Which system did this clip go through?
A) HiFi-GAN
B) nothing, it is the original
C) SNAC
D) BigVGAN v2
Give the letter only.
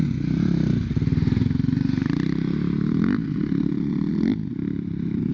B